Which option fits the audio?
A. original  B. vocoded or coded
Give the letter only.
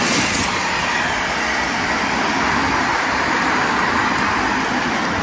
A